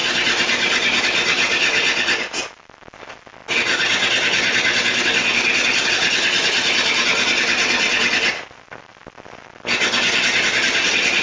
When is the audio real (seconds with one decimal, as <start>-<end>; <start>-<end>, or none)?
0.0-11.2